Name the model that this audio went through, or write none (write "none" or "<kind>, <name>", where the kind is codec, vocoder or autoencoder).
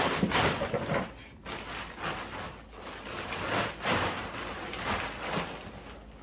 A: none